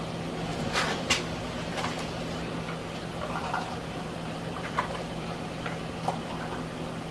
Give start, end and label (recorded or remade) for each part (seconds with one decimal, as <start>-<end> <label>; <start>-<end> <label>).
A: 0.0-0.5 recorded; 0.5-1.2 remade; 1.2-2.8 recorded; 2.8-6.3 remade; 6.3-7.1 recorded